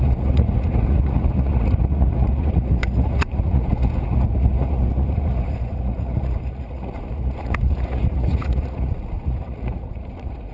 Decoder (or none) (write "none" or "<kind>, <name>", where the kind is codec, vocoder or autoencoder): vocoder, Vocos